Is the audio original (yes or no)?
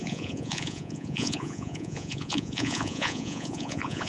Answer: no